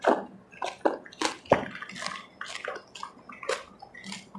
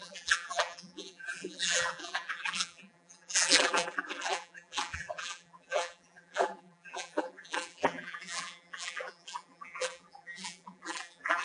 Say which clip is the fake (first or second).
second